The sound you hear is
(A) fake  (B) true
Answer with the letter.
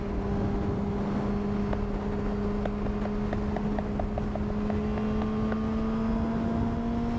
B